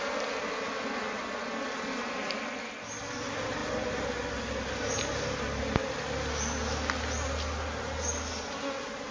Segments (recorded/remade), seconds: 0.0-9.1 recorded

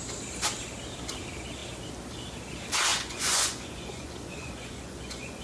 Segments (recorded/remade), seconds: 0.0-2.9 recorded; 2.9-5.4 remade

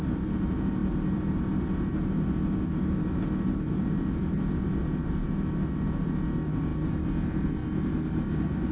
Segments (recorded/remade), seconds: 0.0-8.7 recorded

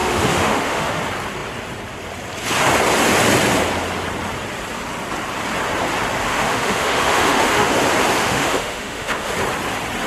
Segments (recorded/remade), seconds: 0.0-1.0 remade; 1.0-6.3 recorded; 6.3-7.7 remade; 7.7-8.2 recorded; 8.2-9.3 remade; 9.3-10.1 recorded

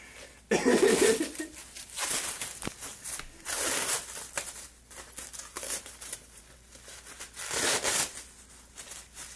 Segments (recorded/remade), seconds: 0.0-5.5 recorded; 5.5-6.4 remade; 6.4-9.4 recorded